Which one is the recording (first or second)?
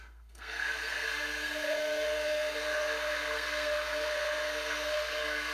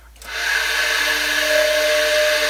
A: second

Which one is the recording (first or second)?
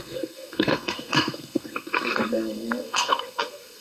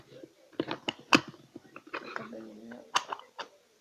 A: second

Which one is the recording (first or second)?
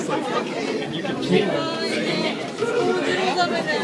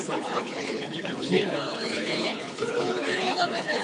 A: first